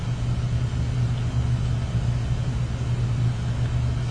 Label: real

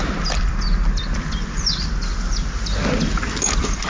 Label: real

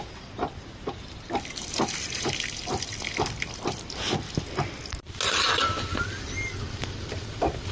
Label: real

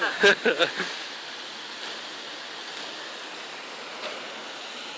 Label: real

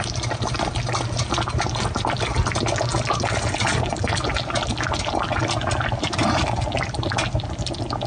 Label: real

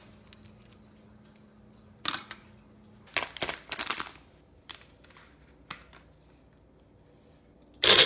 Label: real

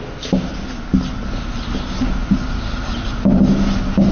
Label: real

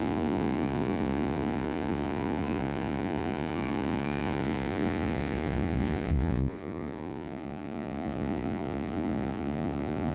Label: fake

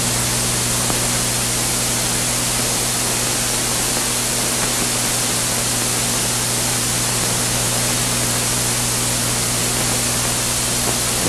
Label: real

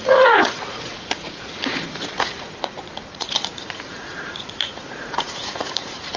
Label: fake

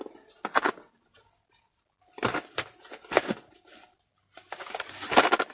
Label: real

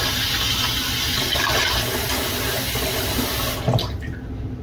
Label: real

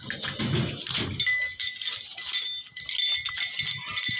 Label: real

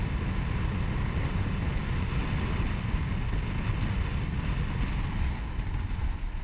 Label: real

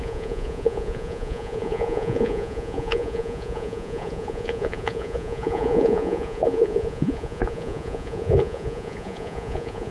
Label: fake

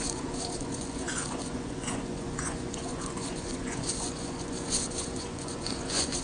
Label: fake